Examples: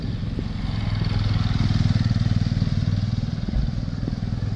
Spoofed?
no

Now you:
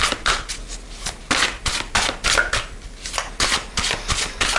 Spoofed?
no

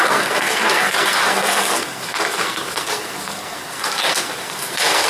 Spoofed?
yes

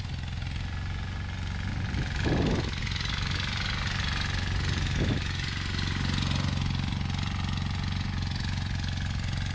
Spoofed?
no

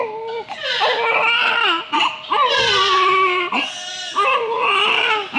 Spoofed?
no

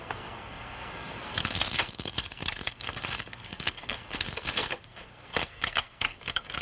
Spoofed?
yes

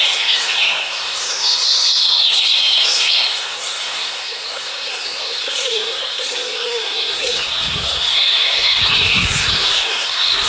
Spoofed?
yes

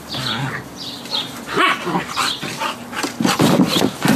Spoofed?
no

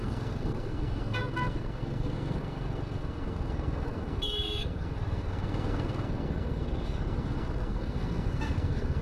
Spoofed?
yes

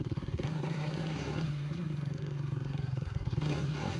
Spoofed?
yes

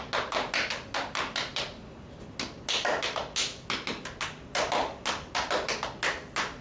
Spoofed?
no